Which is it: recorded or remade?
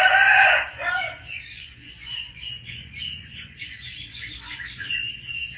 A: remade